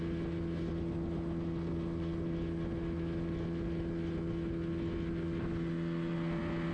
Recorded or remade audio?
recorded